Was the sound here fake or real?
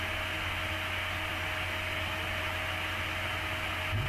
real